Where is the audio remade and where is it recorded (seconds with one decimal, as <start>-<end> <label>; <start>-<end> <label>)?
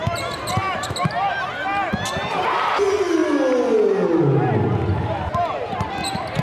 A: 0.0-6.4 recorded